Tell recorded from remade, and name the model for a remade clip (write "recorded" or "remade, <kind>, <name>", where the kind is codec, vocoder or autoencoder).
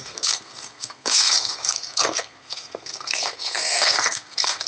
remade, codec, SNAC